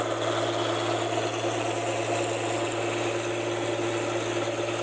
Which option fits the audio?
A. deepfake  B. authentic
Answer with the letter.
B